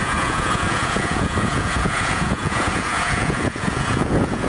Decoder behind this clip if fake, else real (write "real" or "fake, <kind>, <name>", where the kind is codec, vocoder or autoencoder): fake, vocoder, Vocos